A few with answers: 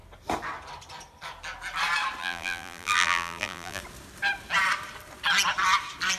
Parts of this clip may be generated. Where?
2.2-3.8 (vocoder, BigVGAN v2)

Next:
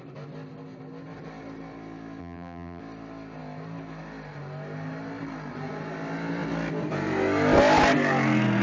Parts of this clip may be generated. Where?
2.2-2.8 (vocoder, BigVGAN v2)

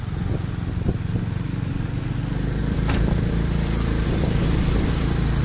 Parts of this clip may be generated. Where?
2.6-5.4 (vocoder, BigVGAN v2)

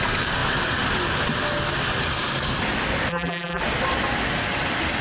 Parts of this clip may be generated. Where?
3.1-3.6 (vocoder, BigVGAN v2)

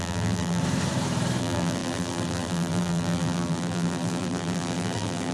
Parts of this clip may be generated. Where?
0.0-0.6 (vocoder, BigVGAN v2); 1.4-5.3

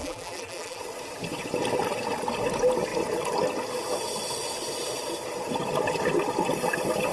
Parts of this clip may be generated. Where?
0.0-0.8 (vocoder, BigVGAN v2)